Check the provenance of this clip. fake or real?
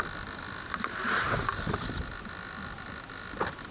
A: real